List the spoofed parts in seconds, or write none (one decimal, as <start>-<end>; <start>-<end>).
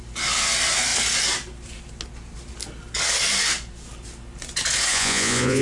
4.9-5.6